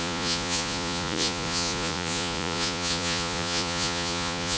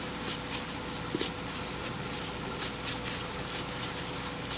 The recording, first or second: second